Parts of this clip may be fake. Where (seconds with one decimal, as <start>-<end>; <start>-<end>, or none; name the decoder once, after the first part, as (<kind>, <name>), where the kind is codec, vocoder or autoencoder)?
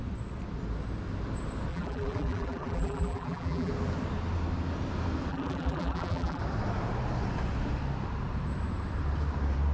1.7-3.7 (vocoder, BigVGAN v2); 5.3-6.4